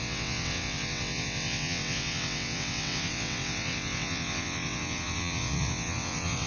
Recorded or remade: remade